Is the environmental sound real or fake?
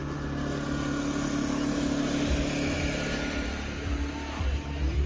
real